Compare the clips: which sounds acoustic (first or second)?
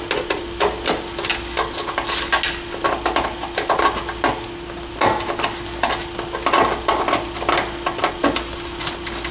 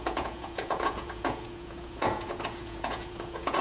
first